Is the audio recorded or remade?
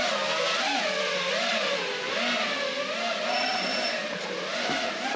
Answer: recorded